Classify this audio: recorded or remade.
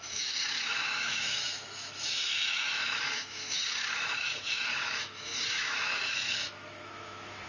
remade